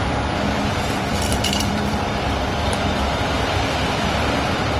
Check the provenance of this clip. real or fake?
fake